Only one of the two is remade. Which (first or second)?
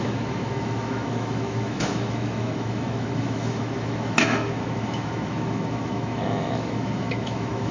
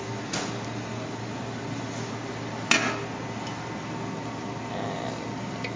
first